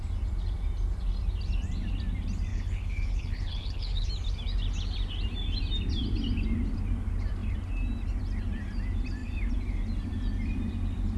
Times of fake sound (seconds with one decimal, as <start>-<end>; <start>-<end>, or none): 2.5-4.1